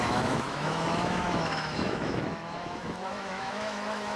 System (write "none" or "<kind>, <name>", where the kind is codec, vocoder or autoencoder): autoencoder, DAC-VAE